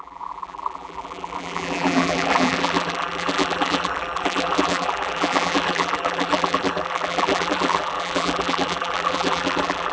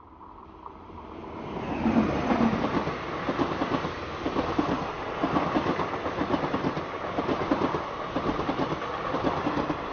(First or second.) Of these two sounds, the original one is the second